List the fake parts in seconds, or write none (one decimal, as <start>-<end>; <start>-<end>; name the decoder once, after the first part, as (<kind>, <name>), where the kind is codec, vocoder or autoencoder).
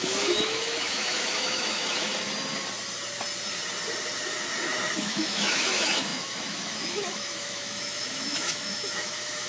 0.0-2.1 (autoencoder, DAC-VAE); 5.0-9.5